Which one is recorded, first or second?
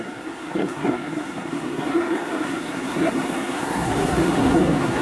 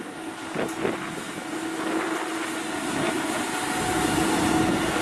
second